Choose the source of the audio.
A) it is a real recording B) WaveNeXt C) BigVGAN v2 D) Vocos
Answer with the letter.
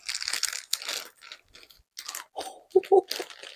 A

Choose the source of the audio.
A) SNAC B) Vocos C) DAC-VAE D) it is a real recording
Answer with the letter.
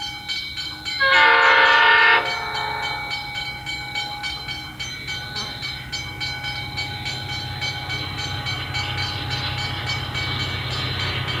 D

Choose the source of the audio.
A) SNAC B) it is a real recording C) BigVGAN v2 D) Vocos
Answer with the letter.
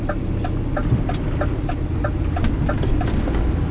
B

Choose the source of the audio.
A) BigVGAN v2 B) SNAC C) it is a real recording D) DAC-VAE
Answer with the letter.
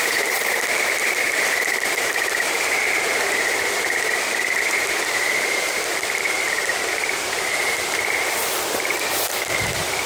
A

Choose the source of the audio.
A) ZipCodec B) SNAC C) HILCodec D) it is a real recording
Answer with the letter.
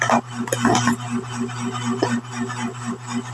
D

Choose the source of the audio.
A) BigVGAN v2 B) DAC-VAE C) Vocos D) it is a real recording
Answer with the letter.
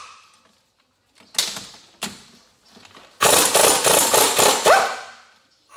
D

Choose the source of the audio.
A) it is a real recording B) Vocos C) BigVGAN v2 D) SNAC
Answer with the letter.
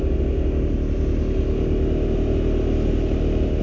A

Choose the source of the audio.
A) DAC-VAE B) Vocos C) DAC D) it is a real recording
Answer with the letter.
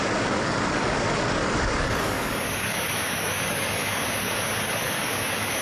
C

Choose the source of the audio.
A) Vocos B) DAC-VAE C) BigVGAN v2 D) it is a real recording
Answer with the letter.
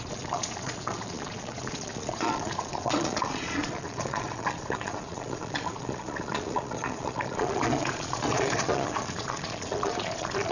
A